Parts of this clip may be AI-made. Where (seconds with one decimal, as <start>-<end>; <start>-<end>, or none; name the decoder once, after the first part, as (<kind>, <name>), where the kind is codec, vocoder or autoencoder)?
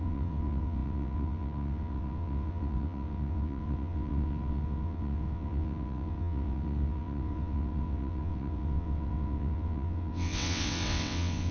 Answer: 0.0-11.5 (vocoder, WaveNeXt)